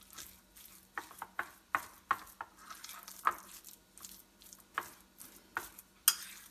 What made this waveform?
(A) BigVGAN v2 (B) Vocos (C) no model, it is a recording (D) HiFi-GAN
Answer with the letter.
C